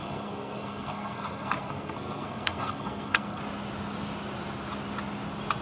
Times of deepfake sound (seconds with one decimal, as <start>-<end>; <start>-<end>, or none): 0.0-3.4